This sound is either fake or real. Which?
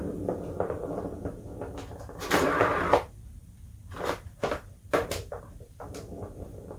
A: fake